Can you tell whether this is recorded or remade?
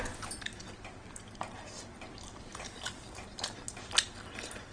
recorded